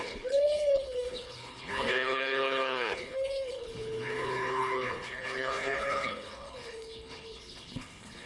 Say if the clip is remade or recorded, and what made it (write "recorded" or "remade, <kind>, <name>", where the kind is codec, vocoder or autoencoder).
remade, codec, HILCodec